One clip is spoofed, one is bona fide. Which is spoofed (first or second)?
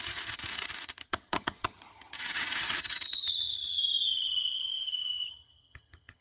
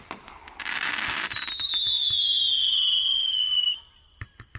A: first